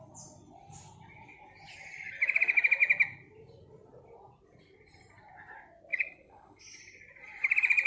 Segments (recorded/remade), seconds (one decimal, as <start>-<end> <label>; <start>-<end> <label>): 0.0-5.9 recorded; 5.9-6.6 remade; 6.6-7.9 recorded